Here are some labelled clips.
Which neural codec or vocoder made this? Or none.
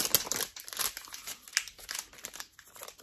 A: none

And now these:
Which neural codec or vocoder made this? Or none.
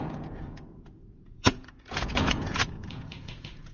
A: vocoder, Vocos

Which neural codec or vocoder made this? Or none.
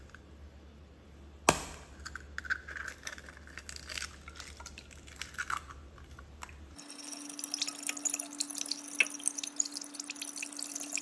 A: none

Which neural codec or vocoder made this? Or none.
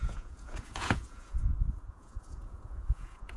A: vocoder, Vocos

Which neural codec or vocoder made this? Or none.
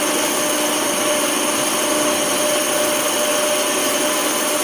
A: none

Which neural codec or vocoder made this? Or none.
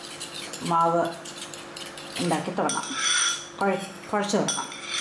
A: none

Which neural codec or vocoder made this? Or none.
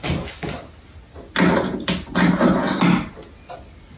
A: none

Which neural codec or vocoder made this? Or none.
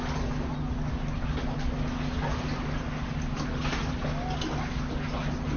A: none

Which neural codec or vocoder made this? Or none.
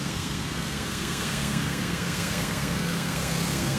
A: codec, SNAC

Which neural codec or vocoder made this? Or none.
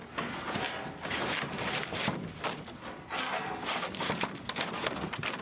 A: none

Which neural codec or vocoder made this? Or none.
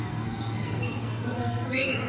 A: codec, SNAC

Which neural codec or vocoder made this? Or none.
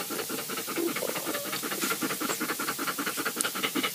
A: none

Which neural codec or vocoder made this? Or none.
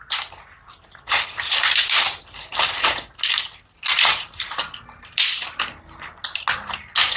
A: none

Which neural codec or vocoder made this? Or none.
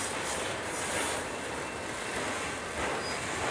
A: none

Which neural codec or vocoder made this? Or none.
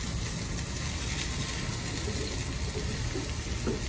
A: none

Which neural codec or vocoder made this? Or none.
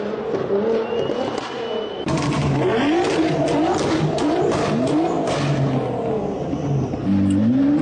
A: none